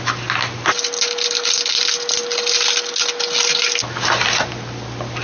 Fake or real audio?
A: real